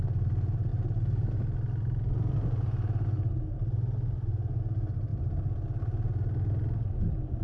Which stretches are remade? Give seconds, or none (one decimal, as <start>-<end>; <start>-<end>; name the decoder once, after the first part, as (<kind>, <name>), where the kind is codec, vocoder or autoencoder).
none